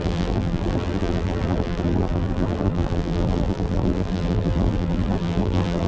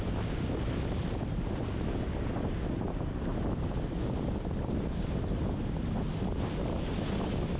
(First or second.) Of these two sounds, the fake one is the first